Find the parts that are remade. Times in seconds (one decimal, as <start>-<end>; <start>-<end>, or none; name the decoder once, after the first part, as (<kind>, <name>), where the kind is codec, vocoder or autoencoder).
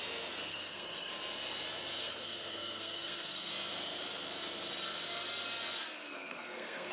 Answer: 0.5-1.1 (codec, SNAC); 2.0-3.5; 6.0-6.9